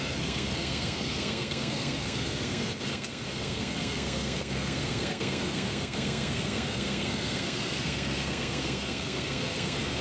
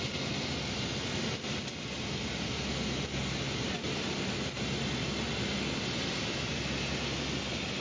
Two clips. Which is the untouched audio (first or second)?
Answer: second